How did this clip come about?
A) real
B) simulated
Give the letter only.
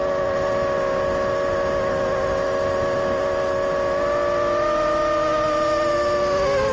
A